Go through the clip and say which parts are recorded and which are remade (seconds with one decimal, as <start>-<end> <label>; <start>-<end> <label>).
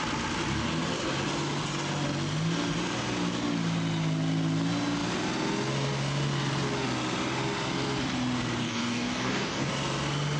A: 0.0-8.6 recorded; 8.6-9.7 remade; 9.7-10.4 recorded